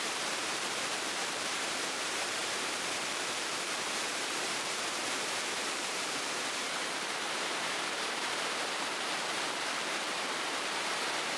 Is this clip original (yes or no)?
no